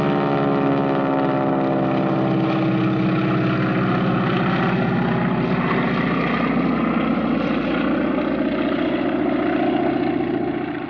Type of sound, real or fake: real